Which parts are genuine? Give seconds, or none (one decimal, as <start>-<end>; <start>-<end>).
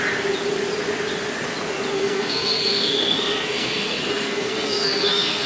0.0-1.9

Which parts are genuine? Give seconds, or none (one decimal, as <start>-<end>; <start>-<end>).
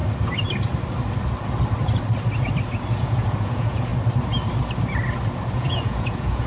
0.0-3.0; 3.9-5.5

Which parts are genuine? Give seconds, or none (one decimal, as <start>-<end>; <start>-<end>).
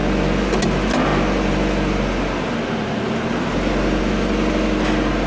0.0-5.3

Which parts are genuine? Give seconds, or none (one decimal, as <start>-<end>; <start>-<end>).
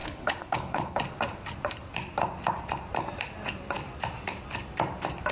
1.0-5.3